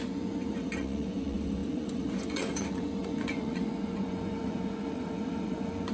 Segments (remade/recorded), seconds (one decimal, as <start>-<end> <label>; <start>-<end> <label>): 0.0-5.9 remade